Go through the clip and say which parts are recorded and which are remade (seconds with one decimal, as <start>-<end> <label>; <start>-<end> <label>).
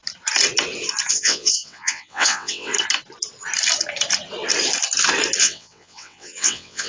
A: 0.0-1.1 recorded; 1.1-2.7 remade; 2.7-5.4 recorded; 5.4-6.9 remade